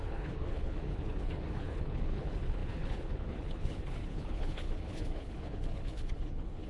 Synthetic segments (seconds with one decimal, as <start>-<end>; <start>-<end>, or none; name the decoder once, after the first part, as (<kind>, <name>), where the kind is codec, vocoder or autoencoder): 0.0-6.7 (codec, HILCodec)